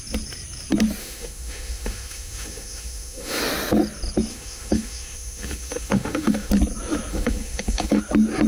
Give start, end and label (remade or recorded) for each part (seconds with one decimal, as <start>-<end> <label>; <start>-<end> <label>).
0.0-1.0 recorded; 1.0-3.4 remade; 3.4-4.3 recorded; 4.3-6.5 remade; 6.5-7.1 recorded; 7.1-8.0 remade; 8.0-8.5 recorded